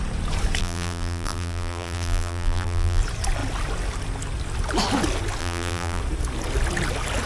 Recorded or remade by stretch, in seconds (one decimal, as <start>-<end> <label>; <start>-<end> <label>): 0.0-0.6 recorded; 0.6-3.0 remade; 3.0-5.4 recorded; 5.4-6.0 remade; 6.0-7.3 recorded